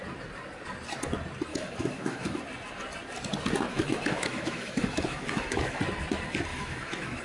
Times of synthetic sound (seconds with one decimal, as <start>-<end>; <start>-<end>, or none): 1.5-2.4; 3.7-5.8; 6.5-7.2